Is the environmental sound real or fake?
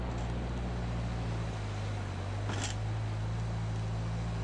real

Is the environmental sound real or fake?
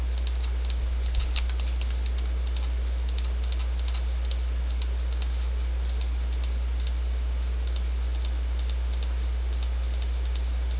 real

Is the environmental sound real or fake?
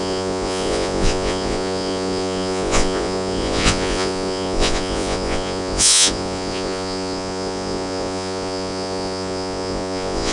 fake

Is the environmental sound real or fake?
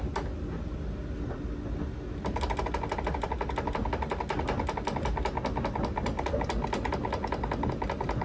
real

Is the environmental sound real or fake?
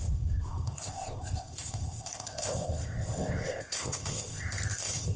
fake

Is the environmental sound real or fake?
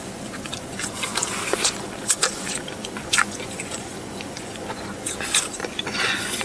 fake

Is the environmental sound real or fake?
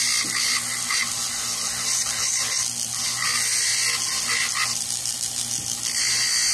real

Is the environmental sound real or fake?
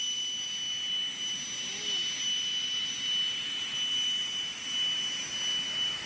real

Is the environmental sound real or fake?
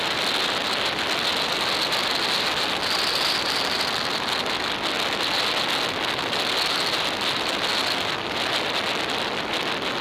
real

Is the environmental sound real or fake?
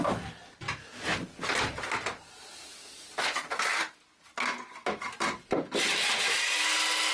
real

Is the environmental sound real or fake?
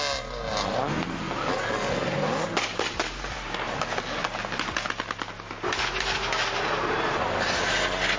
real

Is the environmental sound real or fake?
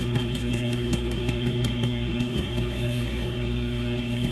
fake